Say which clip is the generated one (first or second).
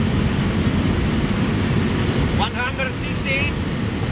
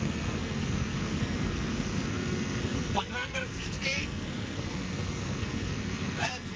second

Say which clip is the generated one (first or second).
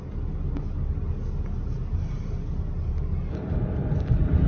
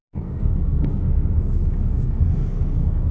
second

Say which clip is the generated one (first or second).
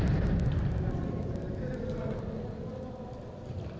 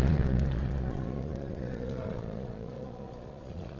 second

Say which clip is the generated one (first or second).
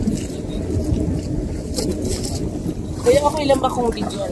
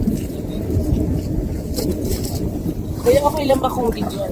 second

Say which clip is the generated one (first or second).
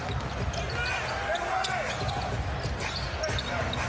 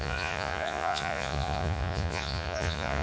second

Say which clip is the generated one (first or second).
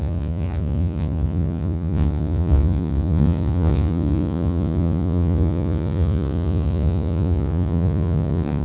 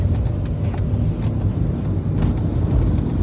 first